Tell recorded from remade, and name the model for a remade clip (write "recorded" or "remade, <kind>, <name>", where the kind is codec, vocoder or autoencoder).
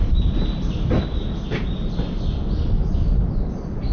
recorded